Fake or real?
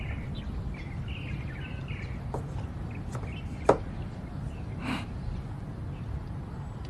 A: real